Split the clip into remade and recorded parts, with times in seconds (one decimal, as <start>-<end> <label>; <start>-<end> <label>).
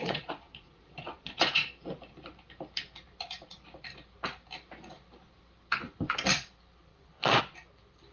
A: 0.0-1.7 remade; 1.7-6.9 recorded; 6.9-7.4 remade; 7.4-8.1 recorded